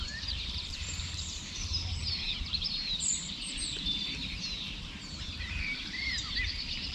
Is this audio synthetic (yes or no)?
yes